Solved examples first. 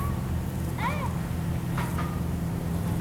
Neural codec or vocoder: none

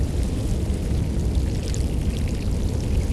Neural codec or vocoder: vocoder, BigVGAN v2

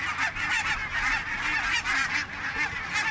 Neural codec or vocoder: none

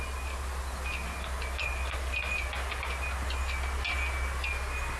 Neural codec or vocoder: none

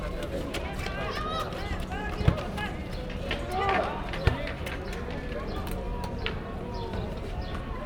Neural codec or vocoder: none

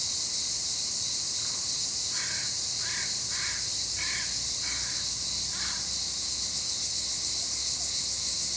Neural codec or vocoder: none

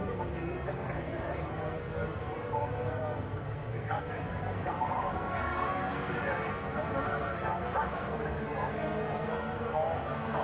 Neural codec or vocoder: codec, SNAC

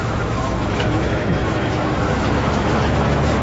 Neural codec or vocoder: autoencoder, DAC-VAE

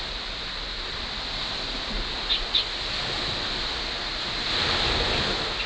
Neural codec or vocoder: none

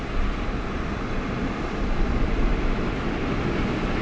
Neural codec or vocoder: none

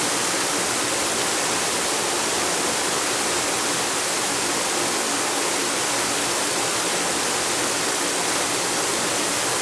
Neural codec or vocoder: none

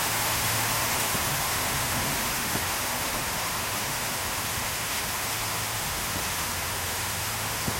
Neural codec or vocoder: autoencoder, DAC-VAE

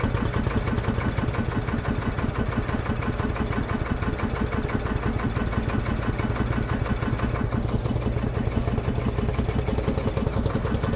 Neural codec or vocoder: none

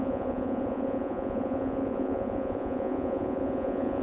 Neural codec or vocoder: vocoder, Vocos